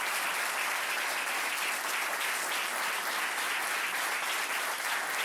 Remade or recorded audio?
recorded